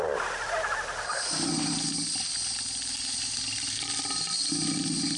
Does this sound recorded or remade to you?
recorded